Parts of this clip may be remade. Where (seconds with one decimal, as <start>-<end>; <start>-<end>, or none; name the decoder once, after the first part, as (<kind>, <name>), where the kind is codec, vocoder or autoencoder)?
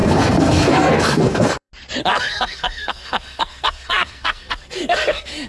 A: 0.0-1.7 (codec, SNAC); 2.1-5.5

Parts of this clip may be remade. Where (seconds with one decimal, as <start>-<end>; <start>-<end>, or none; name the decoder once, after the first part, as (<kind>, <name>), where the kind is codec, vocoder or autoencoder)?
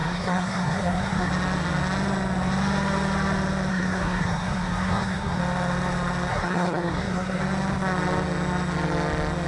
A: 0.0-1.3 (codec, SNAC); 3.7-5.4; 6.3-7.4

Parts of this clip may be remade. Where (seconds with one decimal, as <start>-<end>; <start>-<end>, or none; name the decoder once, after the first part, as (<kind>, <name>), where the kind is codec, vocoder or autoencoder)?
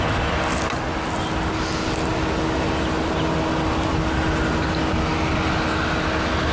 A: none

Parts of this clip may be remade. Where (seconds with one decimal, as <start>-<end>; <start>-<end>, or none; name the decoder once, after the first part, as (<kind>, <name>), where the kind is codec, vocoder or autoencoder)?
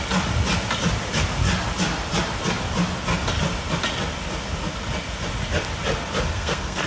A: 6.3-6.9 (codec, SNAC)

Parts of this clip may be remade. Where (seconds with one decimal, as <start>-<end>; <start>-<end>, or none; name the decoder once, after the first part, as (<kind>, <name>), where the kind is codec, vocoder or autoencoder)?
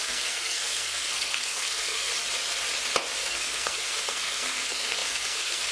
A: 0.0-2.1 (codec, SNAC); 3.2-5.7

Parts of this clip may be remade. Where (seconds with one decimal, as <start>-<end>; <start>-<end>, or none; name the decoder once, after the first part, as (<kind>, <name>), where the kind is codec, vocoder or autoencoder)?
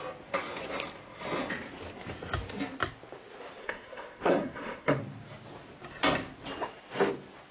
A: 3.6-5.0 (codec, SNAC)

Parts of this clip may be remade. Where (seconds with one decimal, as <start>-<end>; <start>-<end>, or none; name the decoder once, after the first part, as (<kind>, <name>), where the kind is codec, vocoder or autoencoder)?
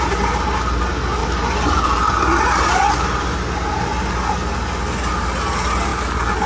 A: none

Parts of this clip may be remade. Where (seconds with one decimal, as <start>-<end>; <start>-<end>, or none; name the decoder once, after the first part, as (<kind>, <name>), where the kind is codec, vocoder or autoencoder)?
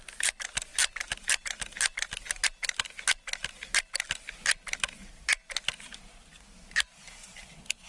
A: none